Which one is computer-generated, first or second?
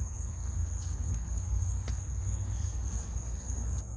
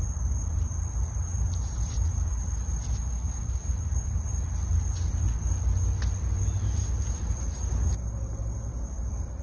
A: first